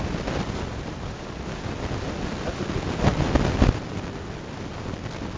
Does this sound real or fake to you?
real